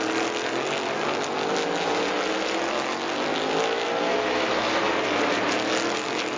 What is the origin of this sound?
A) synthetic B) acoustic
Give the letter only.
B